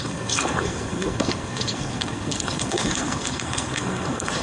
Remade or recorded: remade